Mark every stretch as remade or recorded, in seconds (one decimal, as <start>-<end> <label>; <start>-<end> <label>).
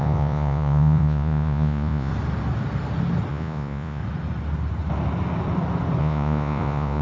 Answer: 0.0-2.1 remade; 2.1-3.3 recorded; 3.3-4.0 remade; 4.0-6.0 recorded; 6.0-7.0 remade